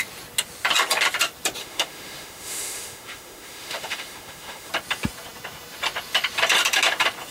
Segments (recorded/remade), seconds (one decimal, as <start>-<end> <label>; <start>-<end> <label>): 0.0-1.6 recorded; 1.6-4.7 remade; 4.7-7.3 recorded